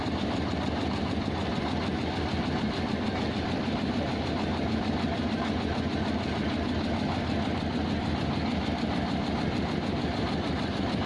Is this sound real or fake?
fake